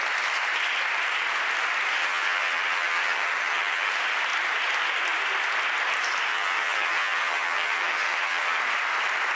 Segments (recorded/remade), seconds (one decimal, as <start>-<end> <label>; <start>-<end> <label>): 0.0-2.0 recorded; 2.0-3.9 remade; 3.9-6.3 recorded; 6.3-8.6 remade; 8.6-9.4 recorded